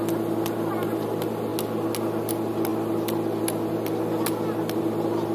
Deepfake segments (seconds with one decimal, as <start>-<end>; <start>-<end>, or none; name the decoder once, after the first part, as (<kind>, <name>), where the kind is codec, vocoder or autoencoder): none